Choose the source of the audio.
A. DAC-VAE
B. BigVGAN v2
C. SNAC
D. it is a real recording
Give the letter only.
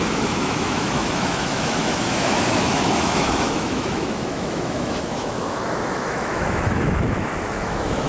A